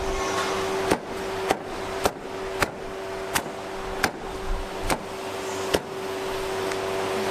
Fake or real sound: real